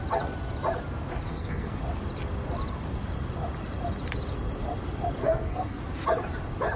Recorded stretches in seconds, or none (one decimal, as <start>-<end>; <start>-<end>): 0.0-1.3; 1.8-5.2; 5.8-6.8